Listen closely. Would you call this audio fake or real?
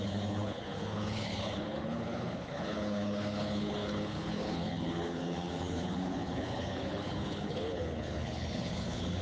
fake